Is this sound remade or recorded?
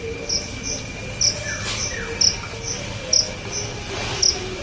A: recorded